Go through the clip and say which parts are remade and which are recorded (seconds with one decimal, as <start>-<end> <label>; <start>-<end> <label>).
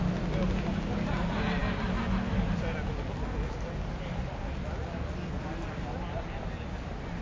0.0-7.2 recorded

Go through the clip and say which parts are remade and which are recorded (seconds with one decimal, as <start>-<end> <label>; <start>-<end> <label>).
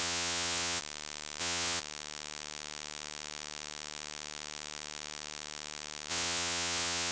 0.0-0.8 remade; 0.8-1.4 recorded; 1.4-1.8 remade; 1.8-6.1 recorded; 6.1-7.1 remade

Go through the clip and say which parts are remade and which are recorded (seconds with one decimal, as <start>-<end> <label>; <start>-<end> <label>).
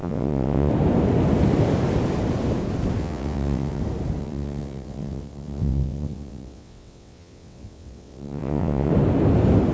0.0-0.7 remade; 0.7-3.0 recorded; 3.0-3.8 remade; 3.8-4.2 recorded; 4.2-8.9 remade; 8.9-9.7 recorded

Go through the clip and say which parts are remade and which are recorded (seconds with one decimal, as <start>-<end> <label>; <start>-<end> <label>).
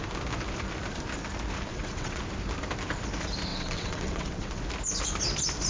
0.0-1.7 recorded; 1.7-2.2 remade; 2.2-3.5 recorded; 3.5-4.6 remade; 4.6-5.7 recorded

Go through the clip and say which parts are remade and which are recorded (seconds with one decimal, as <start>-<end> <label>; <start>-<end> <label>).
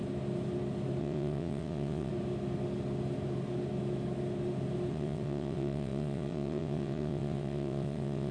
0.0-1.0 recorded; 1.0-2.1 remade; 2.1-4.9 recorded; 4.9-8.3 remade